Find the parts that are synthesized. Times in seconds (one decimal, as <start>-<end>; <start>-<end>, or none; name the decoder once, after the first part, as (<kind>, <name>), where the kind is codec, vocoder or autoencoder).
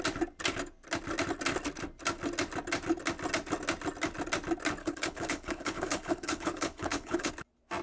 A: 4.8-7.3 (codec, HILCodec)